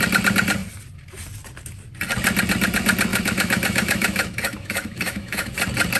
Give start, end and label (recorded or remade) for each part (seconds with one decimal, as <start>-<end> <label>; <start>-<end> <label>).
0.0-3.1 recorded; 3.1-5.5 remade; 5.5-6.0 recorded